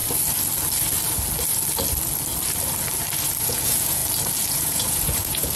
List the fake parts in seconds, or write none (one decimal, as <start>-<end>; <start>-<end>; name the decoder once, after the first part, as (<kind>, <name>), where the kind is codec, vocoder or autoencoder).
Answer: 3.4-4.0 (vocoder, Vocos); 4.5-5.6